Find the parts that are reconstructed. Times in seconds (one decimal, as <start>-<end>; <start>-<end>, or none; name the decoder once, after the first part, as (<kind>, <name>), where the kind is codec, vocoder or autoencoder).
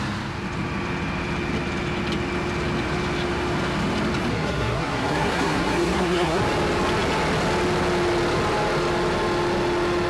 4.3-6.4 (codec, SNAC)